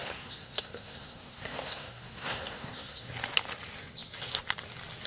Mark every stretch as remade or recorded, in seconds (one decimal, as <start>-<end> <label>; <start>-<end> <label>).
0.0-3.1 remade; 3.1-5.1 recorded